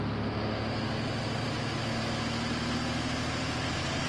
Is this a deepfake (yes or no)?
no